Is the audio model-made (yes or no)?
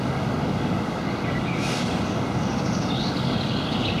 yes